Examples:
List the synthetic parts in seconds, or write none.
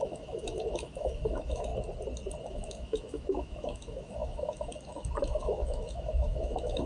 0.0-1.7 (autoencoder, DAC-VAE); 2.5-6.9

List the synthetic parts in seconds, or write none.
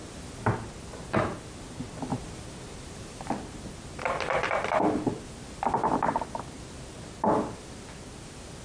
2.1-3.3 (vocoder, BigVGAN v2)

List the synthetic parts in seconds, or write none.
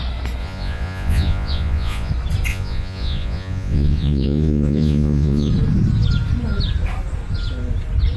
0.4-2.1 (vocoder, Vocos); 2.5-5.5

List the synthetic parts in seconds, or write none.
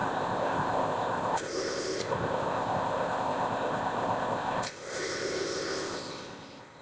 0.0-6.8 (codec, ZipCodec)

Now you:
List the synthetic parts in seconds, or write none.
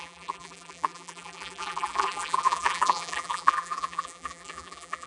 0.0-5.1 (vocoder, BigVGAN v2)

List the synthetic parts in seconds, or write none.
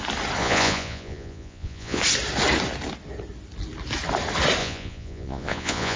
0.4-2.0 (vocoder, Vocos); 4.6-6.0